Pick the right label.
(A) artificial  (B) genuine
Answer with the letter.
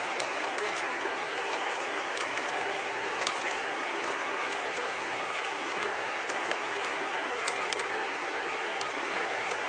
A